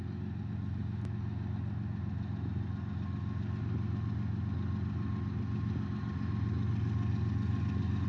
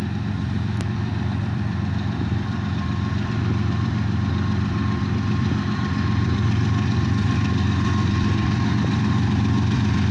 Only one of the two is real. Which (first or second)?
first